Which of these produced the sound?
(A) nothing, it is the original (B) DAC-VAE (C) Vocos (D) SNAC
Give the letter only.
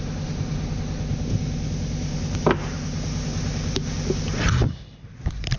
A